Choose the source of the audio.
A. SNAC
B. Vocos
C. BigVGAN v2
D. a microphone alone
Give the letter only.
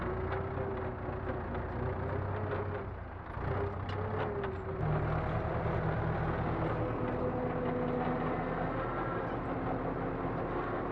D